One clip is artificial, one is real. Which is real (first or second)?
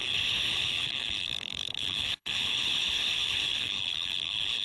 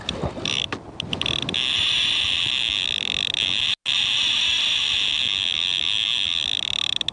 second